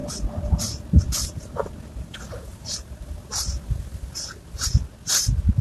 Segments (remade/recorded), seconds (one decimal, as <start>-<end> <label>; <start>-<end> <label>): 0.0-2.5 recorded; 2.5-3.3 remade; 3.3-5.6 recorded